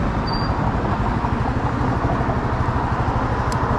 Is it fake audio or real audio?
real